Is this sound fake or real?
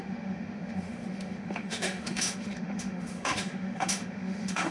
fake